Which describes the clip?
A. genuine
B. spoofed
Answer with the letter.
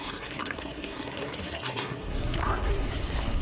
B